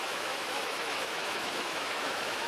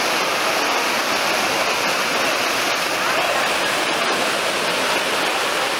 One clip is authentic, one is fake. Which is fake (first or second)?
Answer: first